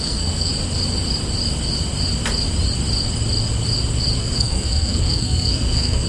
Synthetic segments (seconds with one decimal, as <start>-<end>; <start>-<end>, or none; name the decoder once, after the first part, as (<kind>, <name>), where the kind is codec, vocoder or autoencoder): 0.0-0.5 (codec, SNAC); 4.2-6.1